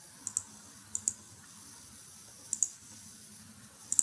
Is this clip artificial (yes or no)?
no